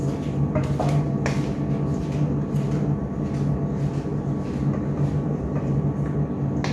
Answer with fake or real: real